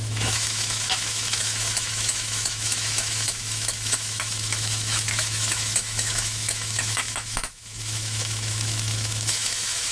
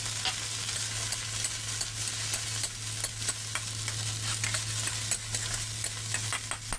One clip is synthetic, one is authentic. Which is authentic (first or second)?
second